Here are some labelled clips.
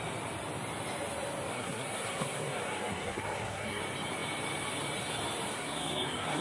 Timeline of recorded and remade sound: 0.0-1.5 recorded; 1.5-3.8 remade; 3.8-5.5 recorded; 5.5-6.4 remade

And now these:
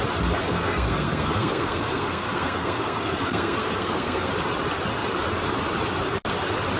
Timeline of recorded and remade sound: 0.0-0.4 recorded; 0.4-4.3 remade; 4.3-6.8 recorded

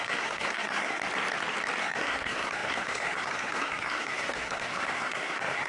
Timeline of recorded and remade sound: 0.0-1.0 remade; 1.0-1.8 recorded; 1.8-5.7 remade

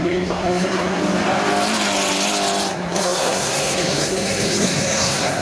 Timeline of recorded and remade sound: 0.0-1.0 remade; 1.0-2.7 recorded; 2.7-5.4 remade

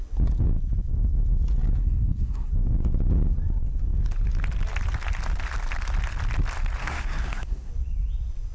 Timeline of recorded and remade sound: 0.0-1.8 recorded; 1.8-2.5 remade; 2.5-6.8 recorded; 6.8-7.7 remade; 7.7-8.5 recorded